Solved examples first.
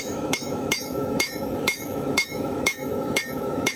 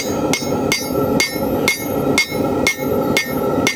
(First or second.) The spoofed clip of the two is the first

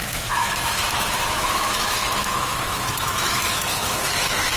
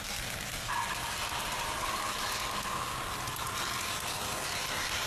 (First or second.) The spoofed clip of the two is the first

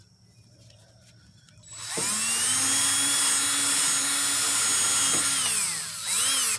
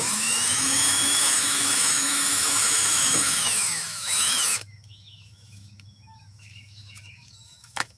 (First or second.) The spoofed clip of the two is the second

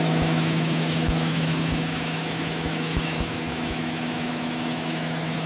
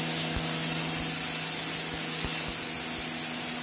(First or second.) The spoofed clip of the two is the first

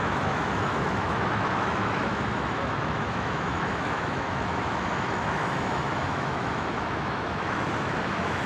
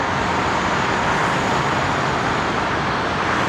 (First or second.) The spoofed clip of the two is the first